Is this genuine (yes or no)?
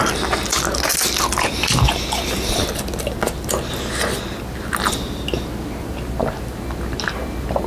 yes